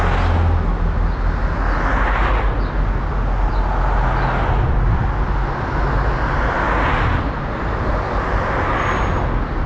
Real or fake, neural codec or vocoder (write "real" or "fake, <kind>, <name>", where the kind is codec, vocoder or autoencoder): real